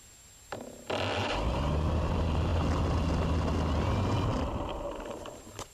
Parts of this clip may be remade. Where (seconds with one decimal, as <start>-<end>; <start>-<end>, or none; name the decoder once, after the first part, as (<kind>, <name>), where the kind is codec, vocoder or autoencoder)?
4.3-5.7 (vocoder, BigVGAN v2)

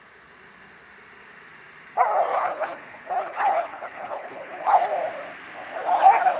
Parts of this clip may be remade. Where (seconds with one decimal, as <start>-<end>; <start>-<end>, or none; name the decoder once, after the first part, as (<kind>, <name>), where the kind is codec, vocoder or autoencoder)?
2.3-4.8 (codec, HILCodec)

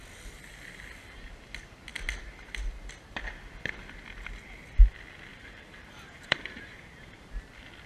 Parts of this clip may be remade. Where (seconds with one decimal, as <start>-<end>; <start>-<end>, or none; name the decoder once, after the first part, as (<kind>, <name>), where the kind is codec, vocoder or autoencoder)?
5.3-7.3 (vocoder, BigVGAN v2)